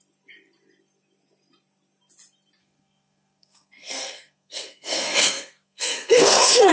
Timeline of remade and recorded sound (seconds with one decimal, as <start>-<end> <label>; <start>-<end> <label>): 0.0-2.6 recorded; 2.6-6.7 remade